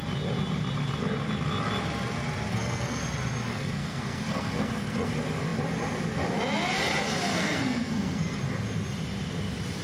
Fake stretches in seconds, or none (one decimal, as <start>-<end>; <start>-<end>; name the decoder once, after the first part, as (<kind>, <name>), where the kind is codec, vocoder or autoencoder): 2.5-3.0 (codec, SNAC); 3.5-5.1; 7.3-8.4